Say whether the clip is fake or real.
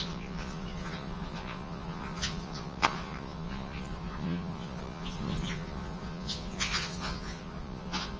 fake